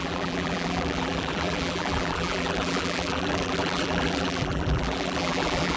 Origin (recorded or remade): remade